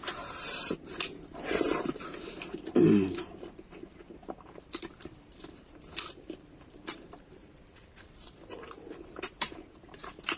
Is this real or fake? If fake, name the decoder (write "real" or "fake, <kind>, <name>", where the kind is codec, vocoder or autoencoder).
fake, vocoder, BigVGAN v2